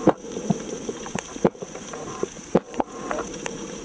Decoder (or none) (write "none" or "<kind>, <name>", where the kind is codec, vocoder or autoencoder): vocoder, Vocos